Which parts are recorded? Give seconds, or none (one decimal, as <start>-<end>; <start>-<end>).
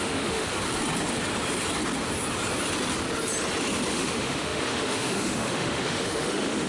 0.5-3.9